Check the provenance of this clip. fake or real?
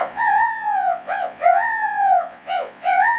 fake